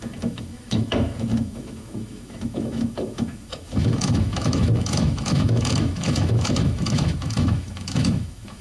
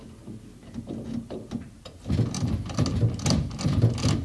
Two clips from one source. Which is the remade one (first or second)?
first